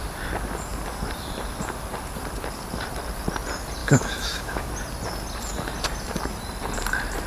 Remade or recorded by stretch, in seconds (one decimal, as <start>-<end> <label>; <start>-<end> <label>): 0.0-3.8 recorded; 3.8-4.7 remade; 4.7-7.3 recorded